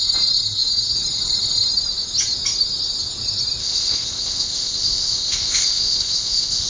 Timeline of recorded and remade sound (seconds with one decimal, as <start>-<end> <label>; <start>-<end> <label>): 0.0-3.6 recorded; 3.6-6.7 remade